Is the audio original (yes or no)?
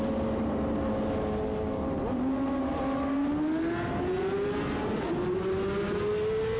yes